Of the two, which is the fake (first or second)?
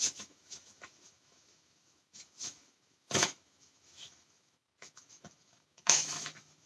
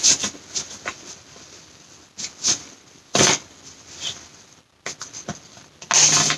first